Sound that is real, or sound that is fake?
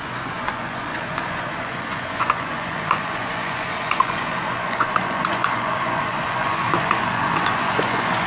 fake